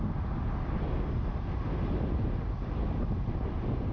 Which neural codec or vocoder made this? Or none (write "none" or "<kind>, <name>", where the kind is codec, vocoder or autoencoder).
none